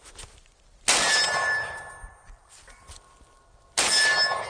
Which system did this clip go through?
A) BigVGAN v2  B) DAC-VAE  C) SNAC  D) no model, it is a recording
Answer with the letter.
D